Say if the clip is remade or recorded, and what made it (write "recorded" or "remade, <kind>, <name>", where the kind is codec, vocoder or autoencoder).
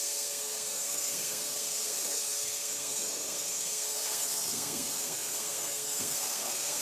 remade, codec, SNAC